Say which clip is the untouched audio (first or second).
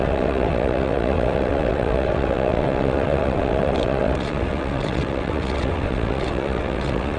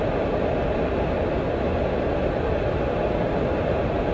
second